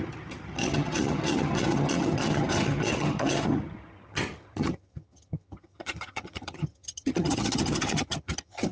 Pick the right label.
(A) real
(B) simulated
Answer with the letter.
B